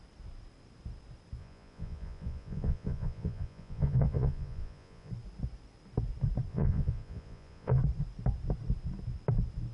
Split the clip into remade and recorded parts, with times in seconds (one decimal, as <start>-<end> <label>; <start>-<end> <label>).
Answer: 0.0-1.4 recorded; 1.4-5.1 remade; 5.1-6.5 recorded; 6.5-7.8 remade; 7.8-9.7 recorded